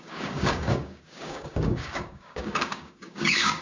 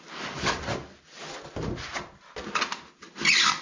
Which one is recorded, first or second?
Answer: second